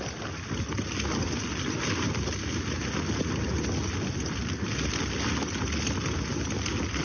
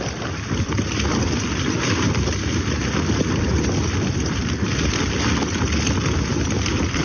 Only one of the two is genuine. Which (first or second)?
first